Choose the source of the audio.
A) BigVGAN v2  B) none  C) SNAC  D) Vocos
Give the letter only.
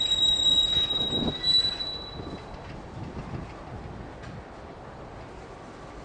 B